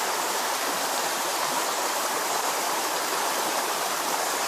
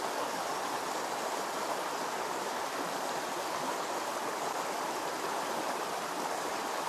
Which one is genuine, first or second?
second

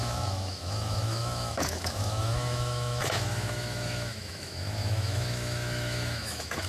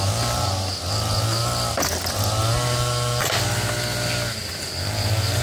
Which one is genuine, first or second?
second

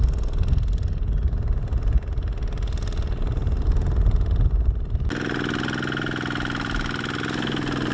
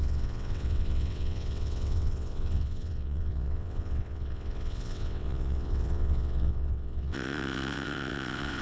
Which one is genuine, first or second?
first